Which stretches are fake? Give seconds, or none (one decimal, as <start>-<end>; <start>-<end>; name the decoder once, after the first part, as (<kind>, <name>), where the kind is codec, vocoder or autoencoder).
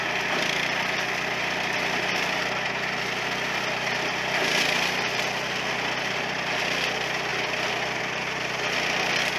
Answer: none